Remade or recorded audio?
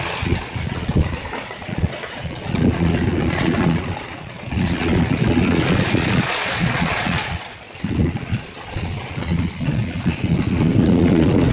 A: remade